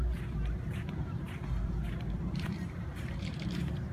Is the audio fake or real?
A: fake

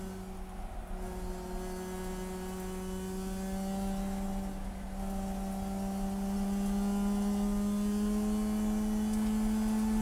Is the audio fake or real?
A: real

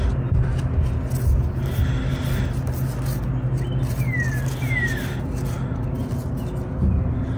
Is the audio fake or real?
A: real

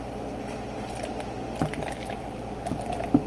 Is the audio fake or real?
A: real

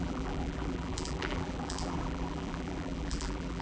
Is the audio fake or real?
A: fake